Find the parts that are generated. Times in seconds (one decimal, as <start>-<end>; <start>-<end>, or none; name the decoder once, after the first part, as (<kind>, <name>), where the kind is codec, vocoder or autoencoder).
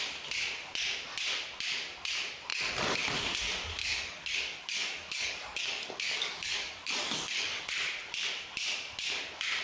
3.8-7.6 (codec, DAC)